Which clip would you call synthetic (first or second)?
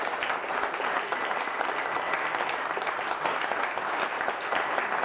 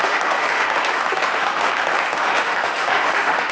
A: second